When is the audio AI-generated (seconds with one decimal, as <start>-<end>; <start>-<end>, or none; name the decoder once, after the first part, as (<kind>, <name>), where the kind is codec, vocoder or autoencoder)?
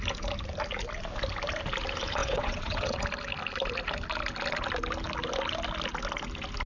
2.2-3.0 (vocoder, WaveNeXt)